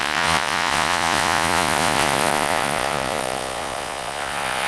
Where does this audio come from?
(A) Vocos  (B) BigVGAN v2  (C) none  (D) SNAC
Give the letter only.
A